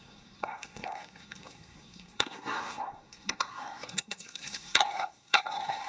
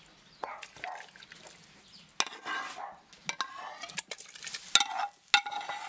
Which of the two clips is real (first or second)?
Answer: second